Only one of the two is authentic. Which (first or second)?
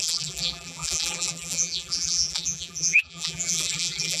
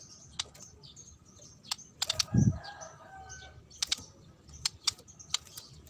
second